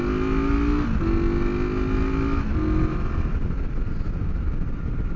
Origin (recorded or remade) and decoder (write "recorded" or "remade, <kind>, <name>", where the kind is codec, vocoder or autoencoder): recorded